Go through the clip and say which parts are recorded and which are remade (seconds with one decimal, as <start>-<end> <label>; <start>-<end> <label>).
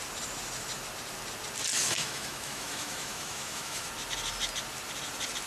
0.0-1.8 recorded; 1.8-3.9 remade; 3.9-5.5 recorded